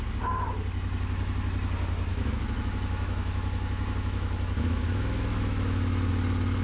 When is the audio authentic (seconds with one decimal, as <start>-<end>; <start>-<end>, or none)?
0.0-2.1; 6.1-6.6